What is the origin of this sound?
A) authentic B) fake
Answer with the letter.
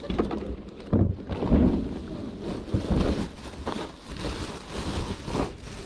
A